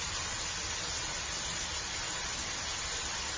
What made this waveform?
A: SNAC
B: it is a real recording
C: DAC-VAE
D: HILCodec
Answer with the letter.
B